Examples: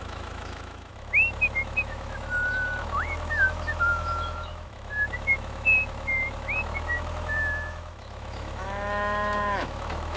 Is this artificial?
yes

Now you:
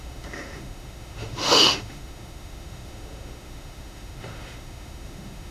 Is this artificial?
yes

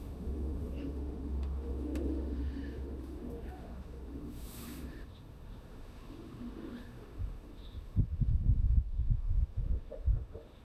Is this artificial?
yes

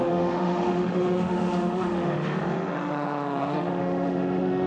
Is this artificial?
yes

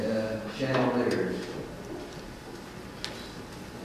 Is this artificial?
no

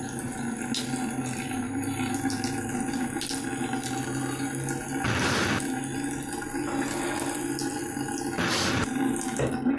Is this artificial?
no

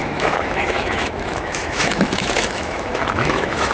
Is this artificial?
yes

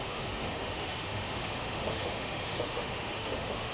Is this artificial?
yes